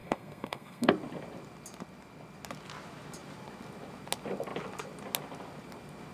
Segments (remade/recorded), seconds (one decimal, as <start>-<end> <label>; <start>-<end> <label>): 0.0-0.9 remade; 0.9-6.1 recorded